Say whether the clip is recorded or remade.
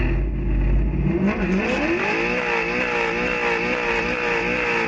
recorded